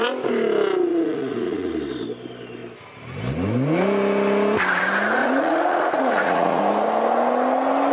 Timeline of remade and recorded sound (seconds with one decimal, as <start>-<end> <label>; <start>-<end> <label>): 0.0-0.9 recorded; 0.9-1.7 remade; 1.7-5.2 recorded; 5.2-6.6 remade; 6.6-7.9 recorded